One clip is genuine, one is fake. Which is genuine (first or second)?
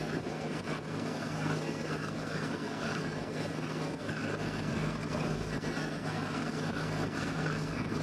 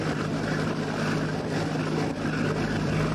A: second